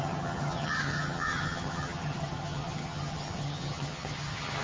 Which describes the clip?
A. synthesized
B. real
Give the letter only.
A